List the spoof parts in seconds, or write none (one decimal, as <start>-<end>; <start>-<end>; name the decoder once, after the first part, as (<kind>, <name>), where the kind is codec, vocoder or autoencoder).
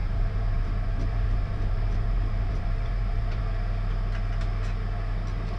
0.0-3.4 (vocoder, BigVGAN v2)